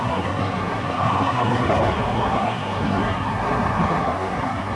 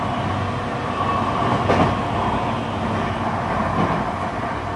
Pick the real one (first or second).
second